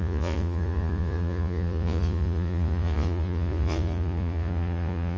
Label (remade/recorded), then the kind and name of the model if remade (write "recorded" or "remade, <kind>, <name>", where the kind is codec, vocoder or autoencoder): remade, vocoder, Vocos